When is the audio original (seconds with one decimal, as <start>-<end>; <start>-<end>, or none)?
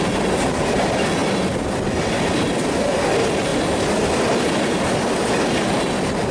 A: 0.0-6.3